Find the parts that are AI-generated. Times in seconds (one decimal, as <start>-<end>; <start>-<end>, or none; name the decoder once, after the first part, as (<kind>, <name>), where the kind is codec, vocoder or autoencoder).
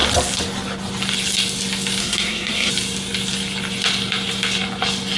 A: 2.0-2.7 (codec, SNAC)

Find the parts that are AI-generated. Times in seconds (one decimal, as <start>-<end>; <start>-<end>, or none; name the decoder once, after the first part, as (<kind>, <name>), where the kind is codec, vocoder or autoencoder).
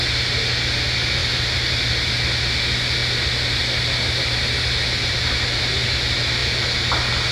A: none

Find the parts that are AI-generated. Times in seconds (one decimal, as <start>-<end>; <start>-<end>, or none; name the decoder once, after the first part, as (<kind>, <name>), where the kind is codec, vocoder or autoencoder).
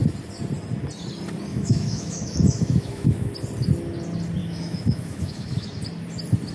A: 1.5-3.3 (autoencoder, DAC-VAE); 4.4-5.8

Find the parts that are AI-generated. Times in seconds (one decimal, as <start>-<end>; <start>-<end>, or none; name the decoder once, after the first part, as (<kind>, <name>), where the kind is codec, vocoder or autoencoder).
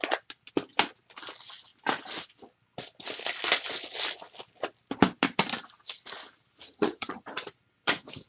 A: 6.6-7.2 (vocoder, HiFi-GAN)